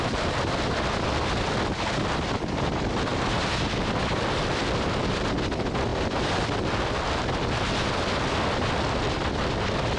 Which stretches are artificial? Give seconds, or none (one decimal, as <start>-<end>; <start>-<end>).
none